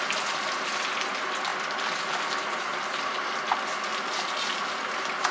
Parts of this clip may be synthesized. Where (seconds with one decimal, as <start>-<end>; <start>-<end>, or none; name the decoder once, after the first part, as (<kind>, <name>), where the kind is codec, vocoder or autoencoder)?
none